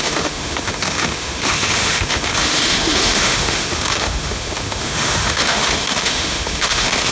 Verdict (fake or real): fake